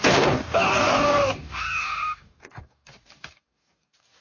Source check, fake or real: fake